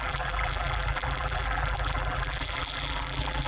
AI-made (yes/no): yes